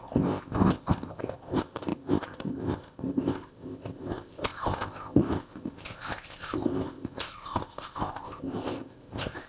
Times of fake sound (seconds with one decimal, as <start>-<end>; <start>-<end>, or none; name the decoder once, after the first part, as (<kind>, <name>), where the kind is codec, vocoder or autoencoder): 0.0-9.5 (codec, ZipCodec)